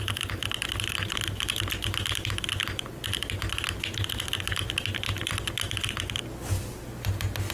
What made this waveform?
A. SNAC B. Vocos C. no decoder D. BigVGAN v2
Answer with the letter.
C